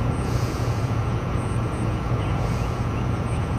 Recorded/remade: remade